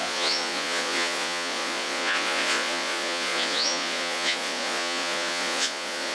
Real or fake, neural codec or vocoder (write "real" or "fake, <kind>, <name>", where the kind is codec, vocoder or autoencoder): fake, vocoder, Vocos